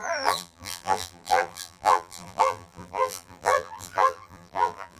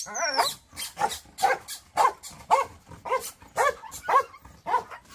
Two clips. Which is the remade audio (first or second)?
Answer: first